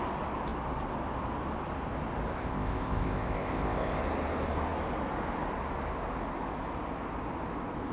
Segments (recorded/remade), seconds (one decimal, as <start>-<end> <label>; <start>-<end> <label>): 0.0-2.3 recorded; 2.3-4.0 remade; 4.0-7.9 recorded